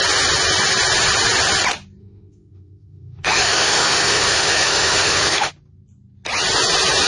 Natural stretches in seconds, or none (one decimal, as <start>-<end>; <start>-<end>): 0.0-2.0; 5.5-7.1